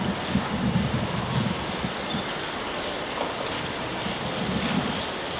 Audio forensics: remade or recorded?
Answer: recorded